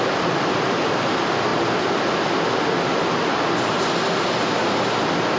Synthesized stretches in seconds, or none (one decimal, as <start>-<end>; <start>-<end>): none